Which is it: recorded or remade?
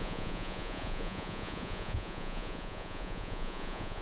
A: remade